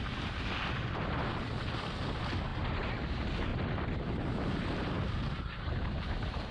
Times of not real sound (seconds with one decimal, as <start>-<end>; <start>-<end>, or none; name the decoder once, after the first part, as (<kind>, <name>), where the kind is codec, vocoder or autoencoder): none